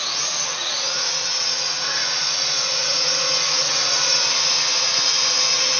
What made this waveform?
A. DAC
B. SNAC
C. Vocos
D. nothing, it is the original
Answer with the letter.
C